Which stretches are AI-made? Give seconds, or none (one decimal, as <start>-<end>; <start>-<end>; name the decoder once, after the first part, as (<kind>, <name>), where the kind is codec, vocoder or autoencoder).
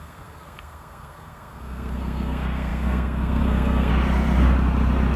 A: 0.0-3.9 (codec, SNAC)